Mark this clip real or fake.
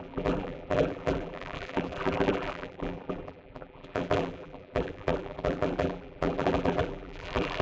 fake